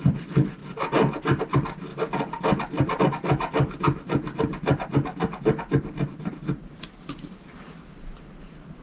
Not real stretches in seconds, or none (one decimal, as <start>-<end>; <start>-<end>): none